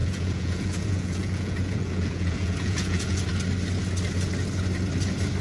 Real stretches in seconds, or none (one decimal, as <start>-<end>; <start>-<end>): 3.2-5.4